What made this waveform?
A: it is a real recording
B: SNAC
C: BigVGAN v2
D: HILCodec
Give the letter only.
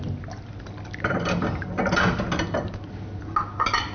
A